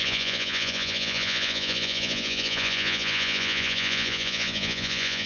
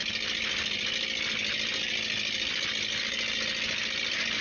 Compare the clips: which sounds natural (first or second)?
second